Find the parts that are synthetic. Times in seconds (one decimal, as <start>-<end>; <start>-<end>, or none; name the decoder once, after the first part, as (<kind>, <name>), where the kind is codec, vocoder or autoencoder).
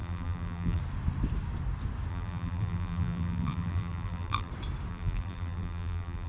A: 0.0-0.8 (vocoder, BigVGAN v2); 2.1-4.5; 4.9-6.3